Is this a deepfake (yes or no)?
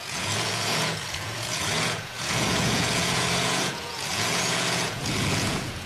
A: yes